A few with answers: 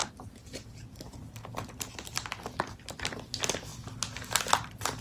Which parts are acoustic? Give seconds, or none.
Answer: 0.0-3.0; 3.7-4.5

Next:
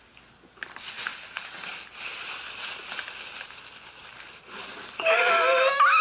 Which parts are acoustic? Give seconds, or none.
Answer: 0.0-1.1; 1.8-4.0; 5.2-6.0

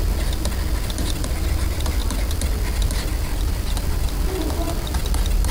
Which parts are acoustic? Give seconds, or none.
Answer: 0.0-3.1; 4.4-5.5

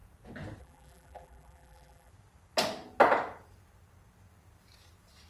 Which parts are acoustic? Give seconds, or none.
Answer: 0.0-0.6; 2.1-5.3

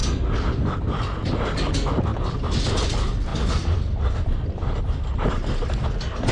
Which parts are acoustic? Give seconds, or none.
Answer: 0.0-3.3; 4.8-6.3

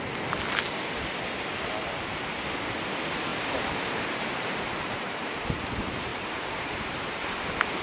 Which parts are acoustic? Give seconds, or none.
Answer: 0.0-3.3; 5.3-6.1; 7.3-7.8

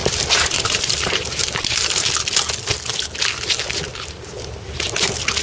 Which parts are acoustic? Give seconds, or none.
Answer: 2.1-3.9; 4.5-5.4